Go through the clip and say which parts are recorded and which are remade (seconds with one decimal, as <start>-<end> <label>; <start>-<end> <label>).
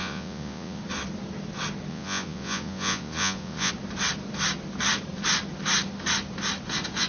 0.0-0.8 remade; 0.8-1.9 recorded; 1.9-3.7 remade; 3.7-7.1 recorded